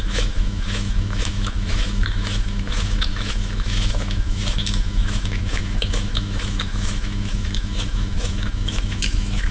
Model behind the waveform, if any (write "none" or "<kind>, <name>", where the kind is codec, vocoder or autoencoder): autoencoder, DAC-VAE